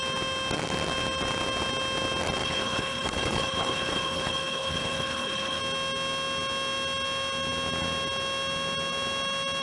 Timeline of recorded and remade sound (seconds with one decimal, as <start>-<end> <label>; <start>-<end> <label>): 0.0-2.4 recorded; 2.4-5.6 remade; 5.6-9.6 recorded